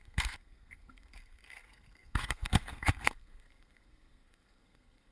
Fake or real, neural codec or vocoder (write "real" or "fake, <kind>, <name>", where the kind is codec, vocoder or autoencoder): fake, codec, SNAC